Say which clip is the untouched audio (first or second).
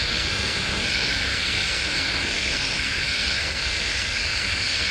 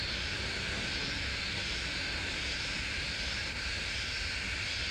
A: second